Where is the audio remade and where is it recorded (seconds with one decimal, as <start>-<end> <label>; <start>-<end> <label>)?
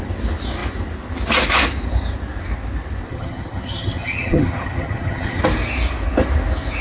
0.0-3.1 recorded; 3.1-5.4 remade; 5.4-6.8 recorded